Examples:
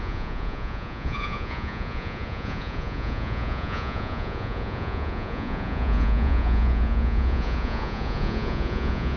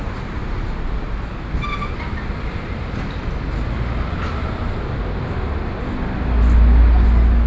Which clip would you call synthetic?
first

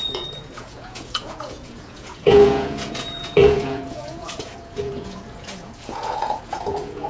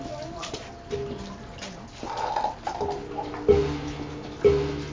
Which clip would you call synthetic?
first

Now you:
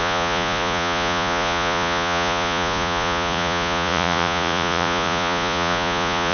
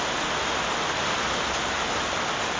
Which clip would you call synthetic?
first